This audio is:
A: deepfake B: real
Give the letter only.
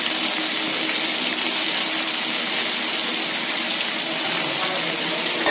B